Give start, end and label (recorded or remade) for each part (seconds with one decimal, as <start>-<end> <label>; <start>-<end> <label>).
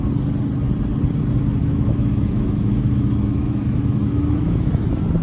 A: 0.0-1.6 recorded; 1.6-4.7 remade; 4.7-5.2 recorded